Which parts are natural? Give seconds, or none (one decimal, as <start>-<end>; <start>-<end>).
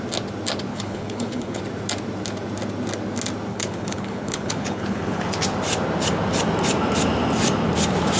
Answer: 0.0-0.7; 1.6-3.5; 5.2-8.2